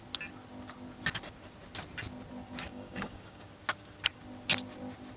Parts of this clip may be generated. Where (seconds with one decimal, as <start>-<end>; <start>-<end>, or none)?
2.7-3.5